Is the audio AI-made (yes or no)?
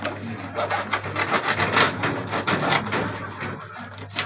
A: no